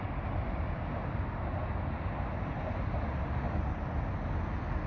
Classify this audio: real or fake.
real